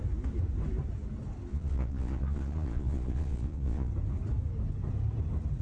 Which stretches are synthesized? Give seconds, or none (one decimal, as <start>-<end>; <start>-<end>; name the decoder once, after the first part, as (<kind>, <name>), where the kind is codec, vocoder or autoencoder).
1.5-3.9 (vocoder, Vocos)